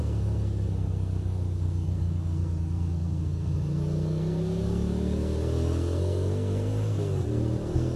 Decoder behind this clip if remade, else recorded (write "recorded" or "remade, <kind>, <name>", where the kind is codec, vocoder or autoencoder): remade, codec, SNAC